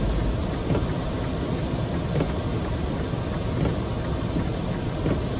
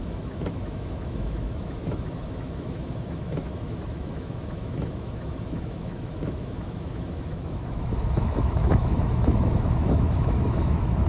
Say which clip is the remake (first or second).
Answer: second